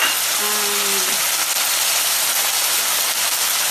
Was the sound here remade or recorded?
recorded